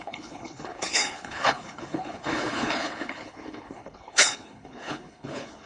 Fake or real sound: fake